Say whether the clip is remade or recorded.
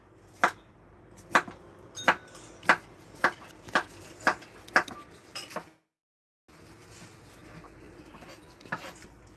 recorded